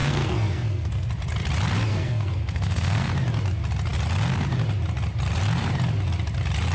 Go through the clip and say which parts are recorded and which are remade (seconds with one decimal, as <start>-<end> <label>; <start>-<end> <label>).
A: 0.0-1.1 remade; 1.1-1.9 recorded; 1.9-3.1 remade; 3.1-6.7 recorded